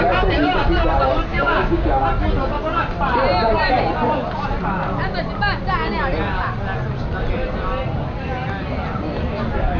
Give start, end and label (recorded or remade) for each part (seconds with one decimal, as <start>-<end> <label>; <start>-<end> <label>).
0.0-1.3 recorded; 1.3-2.0 remade; 2.0-9.8 recorded